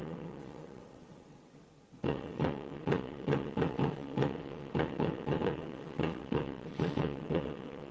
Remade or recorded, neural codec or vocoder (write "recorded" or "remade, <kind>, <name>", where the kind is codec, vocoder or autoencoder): remade, vocoder, WaveNeXt